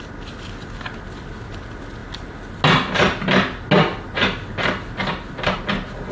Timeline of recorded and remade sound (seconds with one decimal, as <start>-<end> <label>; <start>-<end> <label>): 0.0-6.1 recorded

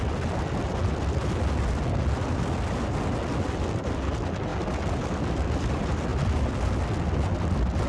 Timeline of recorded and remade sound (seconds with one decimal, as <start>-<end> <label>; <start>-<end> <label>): 0.0-7.9 recorded

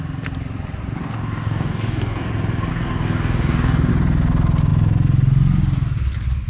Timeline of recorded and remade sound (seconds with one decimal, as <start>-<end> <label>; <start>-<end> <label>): 0.0-1.0 recorded; 1.0-2.3 remade; 2.3-2.7 recorded; 2.7-3.9 remade; 3.9-6.5 recorded

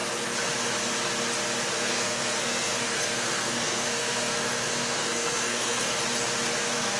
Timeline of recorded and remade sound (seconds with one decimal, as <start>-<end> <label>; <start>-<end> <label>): 0.0-1.7 recorded; 1.7-5.9 remade; 5.9-6.6 recorded; 6.6-7.0 remade

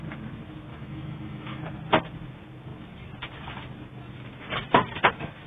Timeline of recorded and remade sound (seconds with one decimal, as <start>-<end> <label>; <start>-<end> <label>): 0.0-0.7 recorded; 0.7-1.6 remade; 1.6-5.5 recorded